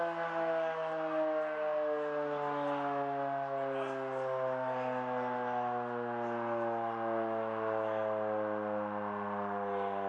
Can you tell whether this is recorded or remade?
recorded